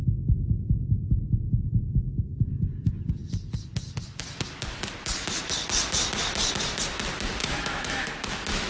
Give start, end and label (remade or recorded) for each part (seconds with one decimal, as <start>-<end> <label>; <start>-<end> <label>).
0.0-7.4 recorded; 7.4-8.1 remade; 8.1-8.7 recorded